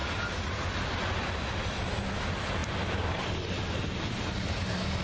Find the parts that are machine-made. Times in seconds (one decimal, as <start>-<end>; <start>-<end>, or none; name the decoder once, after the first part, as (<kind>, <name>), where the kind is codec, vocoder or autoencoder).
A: none